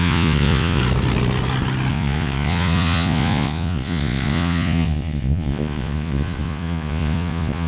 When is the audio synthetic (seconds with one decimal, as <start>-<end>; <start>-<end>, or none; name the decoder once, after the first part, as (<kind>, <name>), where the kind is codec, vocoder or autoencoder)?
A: 0.0-0.8 (vocoder, Vocos); 1.9-7.7